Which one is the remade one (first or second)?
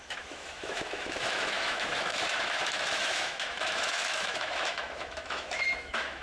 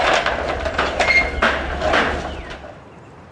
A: first